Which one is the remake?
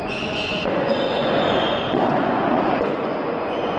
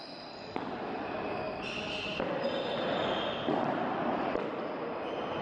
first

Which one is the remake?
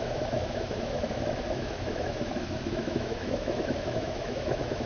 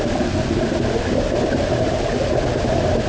first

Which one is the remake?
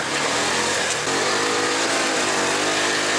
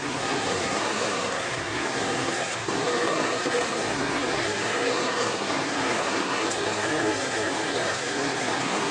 second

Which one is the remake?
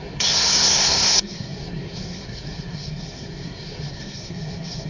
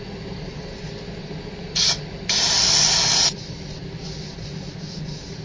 first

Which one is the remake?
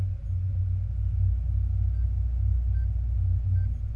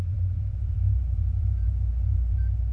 second